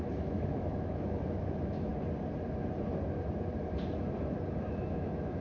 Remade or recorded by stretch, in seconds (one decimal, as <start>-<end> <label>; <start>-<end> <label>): 0.0-1.9 remade; 1.9-4.7 recorded; 4.7-5.4 remade